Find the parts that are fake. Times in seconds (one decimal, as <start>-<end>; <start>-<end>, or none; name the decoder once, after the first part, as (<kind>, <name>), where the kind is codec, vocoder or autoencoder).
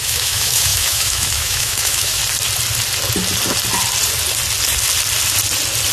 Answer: 0.0-2.2 (autoencoder, DAC-VAE)